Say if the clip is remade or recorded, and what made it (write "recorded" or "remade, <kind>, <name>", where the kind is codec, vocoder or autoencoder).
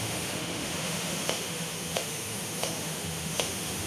remade, autoencoder, DAC-VAE